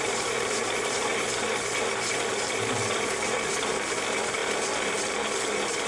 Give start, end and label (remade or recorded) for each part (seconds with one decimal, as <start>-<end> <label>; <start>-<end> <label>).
0.0-1.1 remade; 1.1-2.3 recorded; 2.3-4.4 remade; 4.4-5.0 recorded; 5.0-5.9 remade